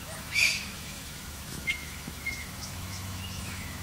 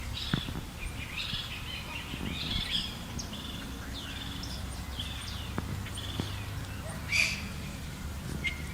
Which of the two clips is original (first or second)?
second